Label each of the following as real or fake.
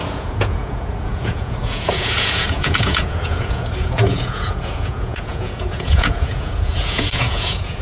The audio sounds fake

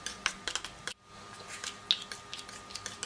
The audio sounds real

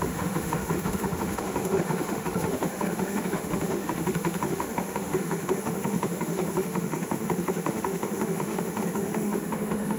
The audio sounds fake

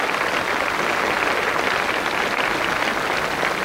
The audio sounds real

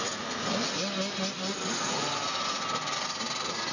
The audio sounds real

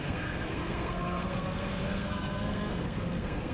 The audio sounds fake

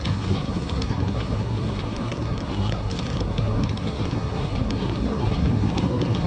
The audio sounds fake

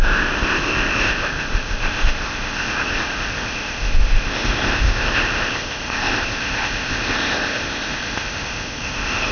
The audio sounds fake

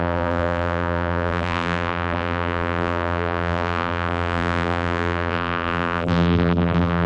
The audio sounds fake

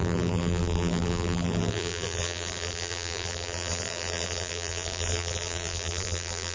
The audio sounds fake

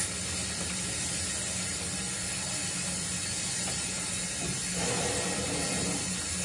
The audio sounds real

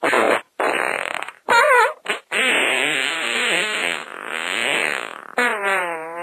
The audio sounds fake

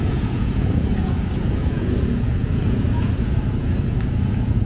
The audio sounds fake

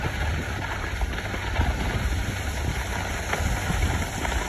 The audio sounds real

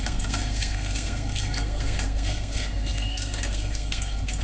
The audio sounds fake